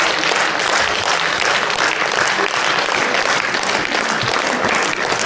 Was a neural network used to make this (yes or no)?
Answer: no